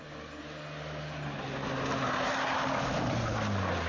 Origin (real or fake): real